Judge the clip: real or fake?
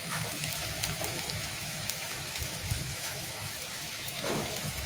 fake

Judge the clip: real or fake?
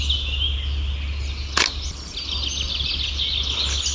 real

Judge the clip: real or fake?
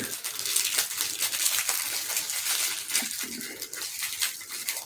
real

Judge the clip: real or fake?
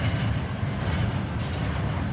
real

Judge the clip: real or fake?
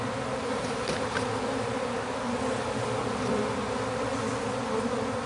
real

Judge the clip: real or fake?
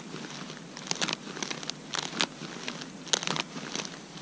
real